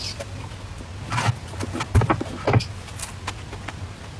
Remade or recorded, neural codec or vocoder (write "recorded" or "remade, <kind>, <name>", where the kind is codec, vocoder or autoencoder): recorded